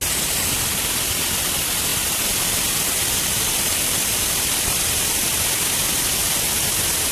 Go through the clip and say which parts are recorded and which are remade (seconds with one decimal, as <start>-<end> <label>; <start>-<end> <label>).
0.0-1.9 recorded; 1.9-5.4 remade; 5.4-7.1 recorded